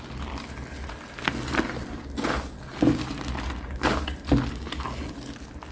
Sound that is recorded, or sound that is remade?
recorded